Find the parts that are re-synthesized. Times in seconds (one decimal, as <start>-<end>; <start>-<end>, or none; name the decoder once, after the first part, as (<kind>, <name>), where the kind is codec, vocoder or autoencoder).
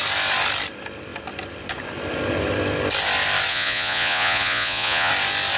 3.5-5.1 (vocoder, Vocos)